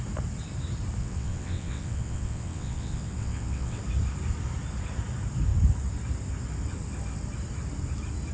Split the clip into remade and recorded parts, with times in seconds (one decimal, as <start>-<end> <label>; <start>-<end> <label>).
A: 0.0-1.0 recorded; 1.0-3.8 remade; 3.8-8.3 recorded